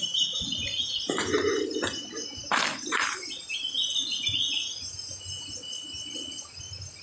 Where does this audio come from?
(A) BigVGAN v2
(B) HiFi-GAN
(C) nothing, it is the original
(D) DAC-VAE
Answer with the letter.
C